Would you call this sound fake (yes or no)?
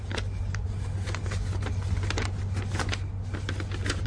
no